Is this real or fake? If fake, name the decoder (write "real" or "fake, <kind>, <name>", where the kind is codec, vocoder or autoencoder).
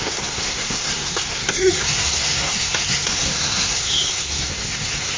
fake, codec, SNAC